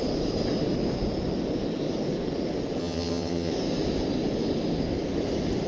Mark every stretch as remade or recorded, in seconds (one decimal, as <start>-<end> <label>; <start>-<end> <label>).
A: 0.0-2.8 recorded; 2.8-3.5 remade; 3.5-5.7 recorded